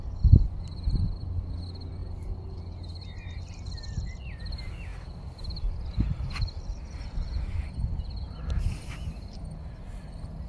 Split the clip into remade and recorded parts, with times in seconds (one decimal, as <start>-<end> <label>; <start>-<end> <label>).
0.0-2.0 recorded; 2.0-2.8 remade; 2.8-4.9 recorded; 4.9-9.4 remade; 9.4-10.5 recorded